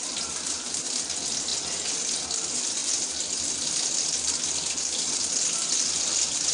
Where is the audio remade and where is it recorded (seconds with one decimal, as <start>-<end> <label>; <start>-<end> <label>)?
0.0-2.8 recorded; 2.8-3.4 remade; 3.4-6.5 recorded